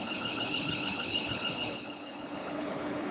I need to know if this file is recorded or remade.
remade